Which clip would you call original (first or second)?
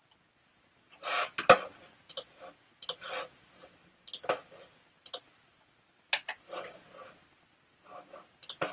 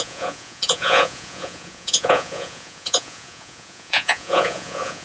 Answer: first